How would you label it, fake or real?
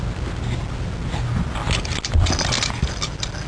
real